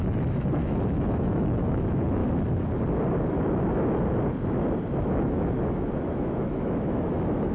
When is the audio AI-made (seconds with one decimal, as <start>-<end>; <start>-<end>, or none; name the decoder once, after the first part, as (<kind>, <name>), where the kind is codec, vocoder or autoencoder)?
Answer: 0.0-2.2 (autoencoder, DAC-VAE); 5.1-7.5